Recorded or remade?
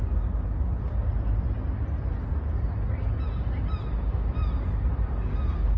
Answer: recorded